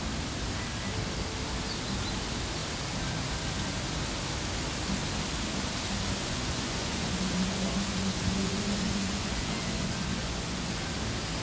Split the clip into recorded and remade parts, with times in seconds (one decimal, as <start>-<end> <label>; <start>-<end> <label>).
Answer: 0.0-6.2 recorded; 6.2-10.8 remade; 10.8-11.4 recorded